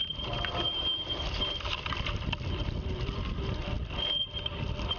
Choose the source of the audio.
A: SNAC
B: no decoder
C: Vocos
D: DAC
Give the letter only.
B